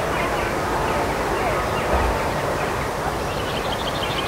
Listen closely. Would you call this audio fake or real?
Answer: real